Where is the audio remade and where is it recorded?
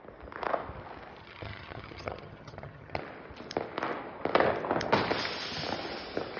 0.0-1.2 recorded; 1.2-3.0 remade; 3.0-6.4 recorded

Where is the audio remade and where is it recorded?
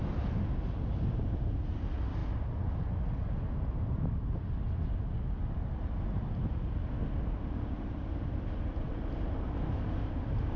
0.0-10.6 recorded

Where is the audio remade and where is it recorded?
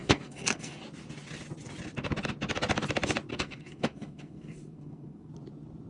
0.0-0.8 remade; 0.8-3.3 recorded; 3.3-5.3 remade; 5.3-5.9 recorded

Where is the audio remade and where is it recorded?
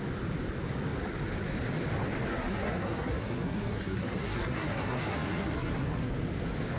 0.0-2.3 recorded; 2.3-6.1 remade; 6.1-6.8 recorded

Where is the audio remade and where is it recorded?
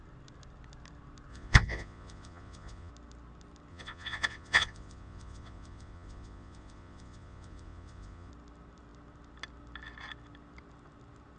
0.0-1.3 recorded; 1.3-2.9 remade; 2.9-3.7 recorded; 3.7-8.3 remade; 8.3-11.4 recorded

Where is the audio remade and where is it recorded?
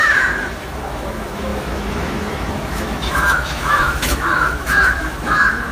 0.0-5.7 remade